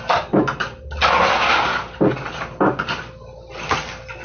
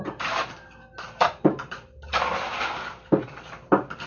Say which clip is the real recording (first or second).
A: first